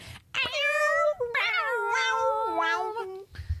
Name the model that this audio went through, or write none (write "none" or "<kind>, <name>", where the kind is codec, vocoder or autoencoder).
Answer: none